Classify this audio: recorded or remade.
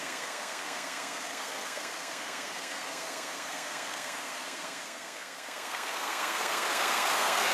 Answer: remade